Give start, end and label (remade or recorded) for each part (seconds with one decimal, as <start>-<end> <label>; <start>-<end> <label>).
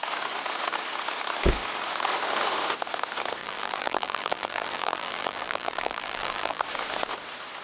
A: 0.0-3.4 recorded; 3.4-6.6 remade; 6.6-7.6 recorded